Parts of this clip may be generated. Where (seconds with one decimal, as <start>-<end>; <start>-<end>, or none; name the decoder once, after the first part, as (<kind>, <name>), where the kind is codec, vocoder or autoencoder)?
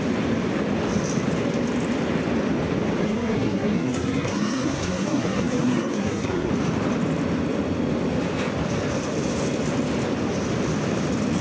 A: 3.0-6.5 (codec, SNAC)